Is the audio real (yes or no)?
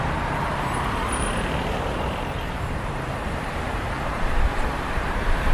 no